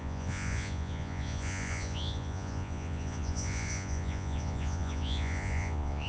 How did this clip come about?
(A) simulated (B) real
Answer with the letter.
A